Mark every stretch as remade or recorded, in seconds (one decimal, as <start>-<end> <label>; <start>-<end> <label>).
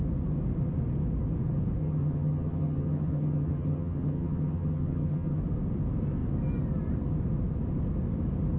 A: 0.0-1.8 recorded; 1.8-5.4 remade; 5.4-8.6 recorded